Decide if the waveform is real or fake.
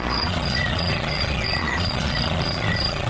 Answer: fake